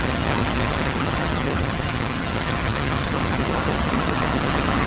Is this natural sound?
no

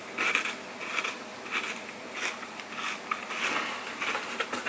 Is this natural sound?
yes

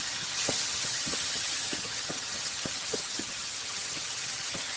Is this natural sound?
no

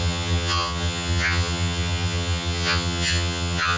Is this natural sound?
no